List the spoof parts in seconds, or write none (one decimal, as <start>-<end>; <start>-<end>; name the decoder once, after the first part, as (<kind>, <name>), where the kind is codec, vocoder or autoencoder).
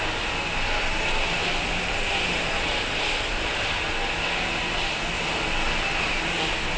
1.4-3.6 (vocoder, BigVGAN v2)